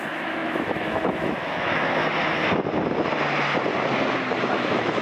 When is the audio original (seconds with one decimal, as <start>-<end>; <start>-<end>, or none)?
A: 2.0-4.5